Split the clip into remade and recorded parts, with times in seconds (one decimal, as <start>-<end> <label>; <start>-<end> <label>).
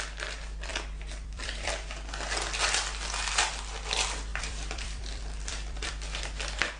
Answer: 0.0-0.7 recorded; 0.7-1.7 remade; 1.7-4.3 recorded; 4.3-5.9 remade; 5.9-6.8 recorded